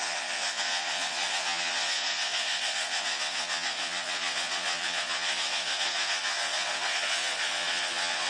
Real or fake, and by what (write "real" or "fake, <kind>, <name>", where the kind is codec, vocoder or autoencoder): fake, vocoder, Vocos